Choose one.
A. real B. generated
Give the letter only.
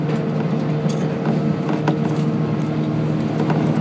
A